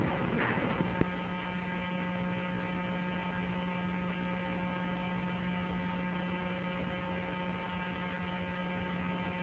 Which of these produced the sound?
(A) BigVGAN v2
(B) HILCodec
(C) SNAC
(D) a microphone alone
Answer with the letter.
D